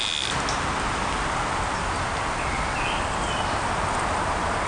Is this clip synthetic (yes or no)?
no